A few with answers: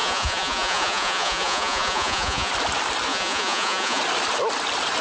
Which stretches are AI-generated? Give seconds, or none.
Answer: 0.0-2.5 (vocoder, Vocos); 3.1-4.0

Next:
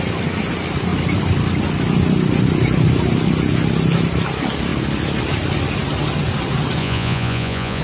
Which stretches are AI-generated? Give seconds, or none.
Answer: 6.8-7.8 (vocoder, Vocos)